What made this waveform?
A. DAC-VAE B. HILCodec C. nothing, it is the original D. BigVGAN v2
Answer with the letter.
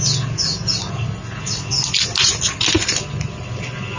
C